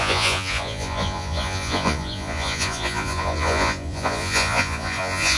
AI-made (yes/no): yes